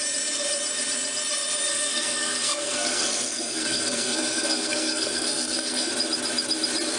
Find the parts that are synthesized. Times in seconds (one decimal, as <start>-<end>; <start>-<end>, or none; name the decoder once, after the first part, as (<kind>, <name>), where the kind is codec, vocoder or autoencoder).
1.7-5.9 (codec, SNAC)